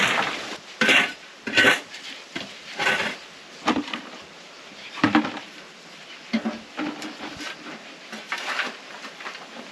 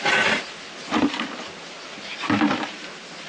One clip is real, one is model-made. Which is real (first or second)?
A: second